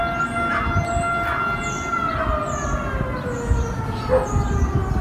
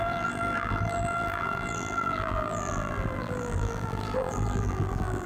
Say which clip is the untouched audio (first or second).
first